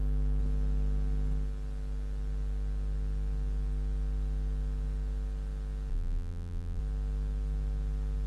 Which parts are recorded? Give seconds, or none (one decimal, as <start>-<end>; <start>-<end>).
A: 0.0-5.9; 6.8-8.3